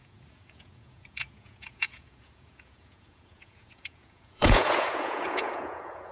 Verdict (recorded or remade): remade